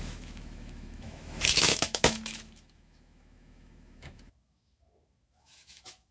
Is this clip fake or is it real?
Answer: fake